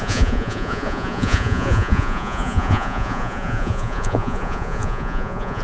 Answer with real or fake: fake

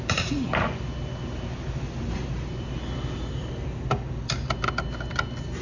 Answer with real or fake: real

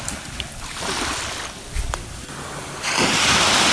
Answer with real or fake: real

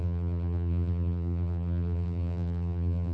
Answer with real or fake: fake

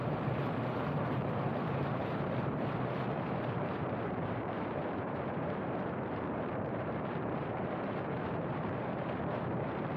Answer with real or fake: fake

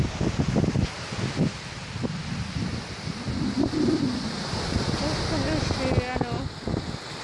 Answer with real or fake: real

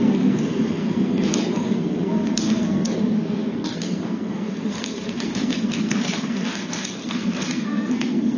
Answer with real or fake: fake